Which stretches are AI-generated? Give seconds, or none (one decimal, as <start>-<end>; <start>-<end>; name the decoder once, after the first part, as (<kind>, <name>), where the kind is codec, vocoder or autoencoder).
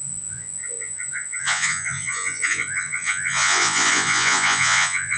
0.0-5.2 (vocoder, Vocos)